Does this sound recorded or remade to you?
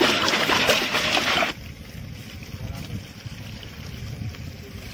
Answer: recorded